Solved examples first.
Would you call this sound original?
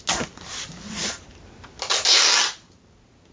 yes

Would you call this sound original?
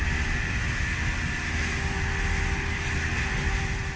yes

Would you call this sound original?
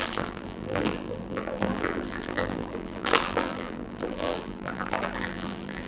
no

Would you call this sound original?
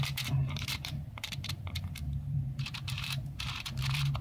no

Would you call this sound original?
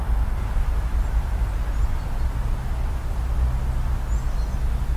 yes